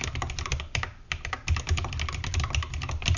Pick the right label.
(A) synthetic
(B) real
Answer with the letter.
B